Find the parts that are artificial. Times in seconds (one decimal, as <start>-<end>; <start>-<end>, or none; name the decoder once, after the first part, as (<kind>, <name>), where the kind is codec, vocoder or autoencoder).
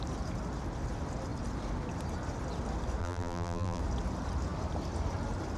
3.0-3.8 (vocoder, BigVGAN v2)